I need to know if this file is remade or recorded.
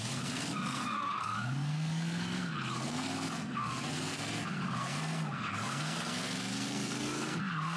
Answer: remade